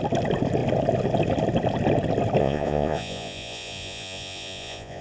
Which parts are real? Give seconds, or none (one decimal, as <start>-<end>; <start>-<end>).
0.0-2.4